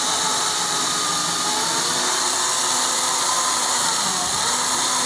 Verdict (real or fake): fake